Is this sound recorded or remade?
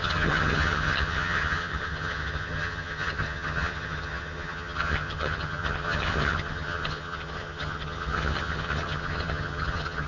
remade